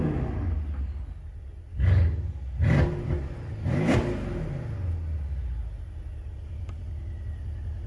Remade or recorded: recorded